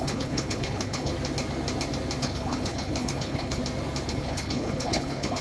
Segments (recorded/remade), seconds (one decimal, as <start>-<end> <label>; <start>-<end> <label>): 0.0-1.1 remade; 1.1-2.2 recorded; 2.2-3.6 remade; 3.6-4.1 recorded; 4.1-5.4 remade